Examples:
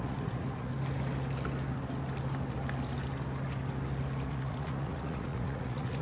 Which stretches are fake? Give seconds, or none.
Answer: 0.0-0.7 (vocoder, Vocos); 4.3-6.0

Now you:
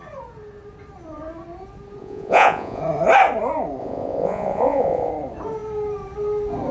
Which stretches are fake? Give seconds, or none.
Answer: 2.0-2.8 (vocoder, Vocos); 3.8-5.1

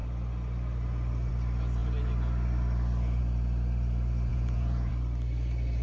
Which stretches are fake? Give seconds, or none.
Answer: 4.3-4.9 (vocoder, Vocos)

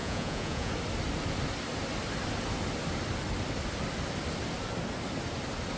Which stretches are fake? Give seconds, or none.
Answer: 0.0-0.7 (vocoder, Vocos)

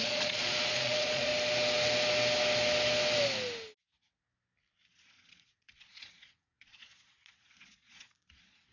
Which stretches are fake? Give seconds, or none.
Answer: 0.0-1.3 (vocoder, Vocos); 4.9-8.7

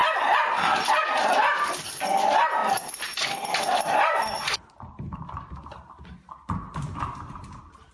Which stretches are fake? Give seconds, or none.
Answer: none